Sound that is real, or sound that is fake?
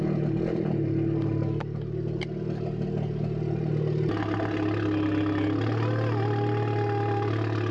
real